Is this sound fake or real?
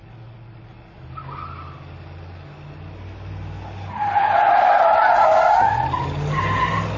real